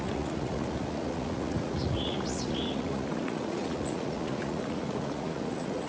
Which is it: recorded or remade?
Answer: remade